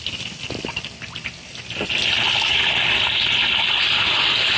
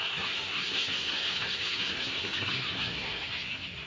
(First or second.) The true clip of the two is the first